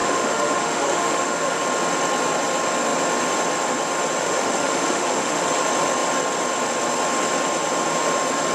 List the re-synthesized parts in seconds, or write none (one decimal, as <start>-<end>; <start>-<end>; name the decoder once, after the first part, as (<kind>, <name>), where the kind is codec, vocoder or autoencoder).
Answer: 0.0-1.6 (autoencoder, DAC-VAE); 4.2-5.4